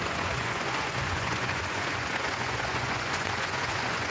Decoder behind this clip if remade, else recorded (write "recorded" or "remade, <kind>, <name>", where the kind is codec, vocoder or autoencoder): remade, vocoder, Vocos